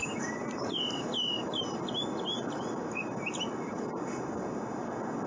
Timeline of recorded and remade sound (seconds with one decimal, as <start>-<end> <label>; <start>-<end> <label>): 0.0-5.3 recorded